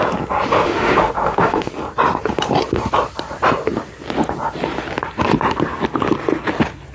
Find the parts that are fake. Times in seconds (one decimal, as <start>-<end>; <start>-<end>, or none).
0.5-1.7